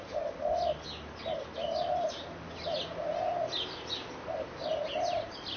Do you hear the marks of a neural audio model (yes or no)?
no